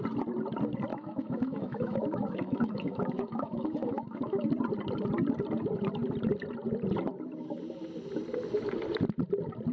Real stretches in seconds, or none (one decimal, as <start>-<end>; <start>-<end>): 0.0-0.9; 4.5-9.7